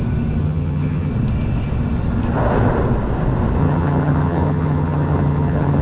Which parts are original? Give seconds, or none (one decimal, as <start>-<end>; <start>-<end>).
0.0-0.4; 1.1-3.6